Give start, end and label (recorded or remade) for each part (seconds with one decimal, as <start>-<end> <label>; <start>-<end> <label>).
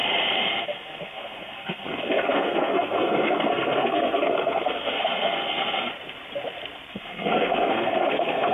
0.0-0.6 recorded; 0.6-5.9 remade; 5.9-6.9 recorded; 6.9-8.5 remade